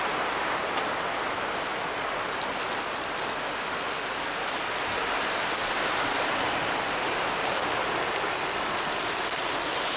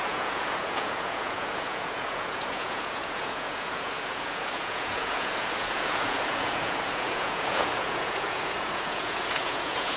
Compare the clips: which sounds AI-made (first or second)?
second